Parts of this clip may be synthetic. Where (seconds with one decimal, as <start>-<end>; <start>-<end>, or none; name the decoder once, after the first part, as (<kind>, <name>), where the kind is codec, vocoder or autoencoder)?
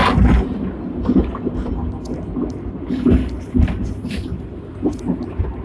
none